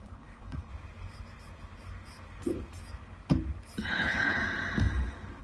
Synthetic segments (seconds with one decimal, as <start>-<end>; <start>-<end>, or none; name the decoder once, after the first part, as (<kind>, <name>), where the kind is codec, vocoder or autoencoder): 0.0-0.7 (codec, HILCodec); 3.9-4.4

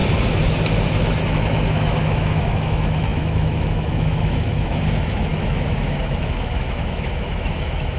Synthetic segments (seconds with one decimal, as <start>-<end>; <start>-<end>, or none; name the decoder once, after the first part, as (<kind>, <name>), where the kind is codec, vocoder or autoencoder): 1.3-8.0 (autoencoder, DAC-VAE)

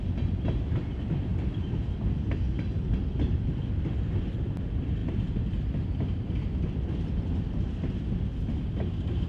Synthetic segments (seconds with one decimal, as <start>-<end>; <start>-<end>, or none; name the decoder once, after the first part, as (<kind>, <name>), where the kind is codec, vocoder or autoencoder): 5.0-6.7 (vocoder, BigVGAN v2)

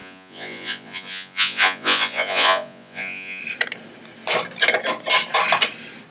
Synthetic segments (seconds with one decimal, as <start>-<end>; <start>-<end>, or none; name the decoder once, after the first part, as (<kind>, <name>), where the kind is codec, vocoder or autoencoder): 0.0-3.4 (vocoder, Vocos)

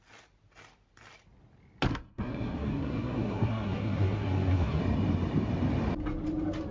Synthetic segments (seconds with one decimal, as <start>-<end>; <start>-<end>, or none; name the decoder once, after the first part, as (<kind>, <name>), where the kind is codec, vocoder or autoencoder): 1.9-4.8 (codec, SNAC)